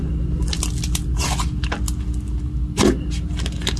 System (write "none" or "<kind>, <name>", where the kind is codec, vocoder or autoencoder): none